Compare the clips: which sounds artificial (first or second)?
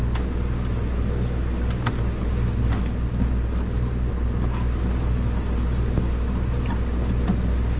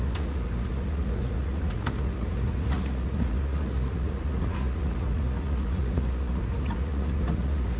second